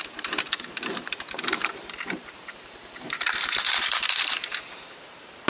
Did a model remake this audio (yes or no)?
yes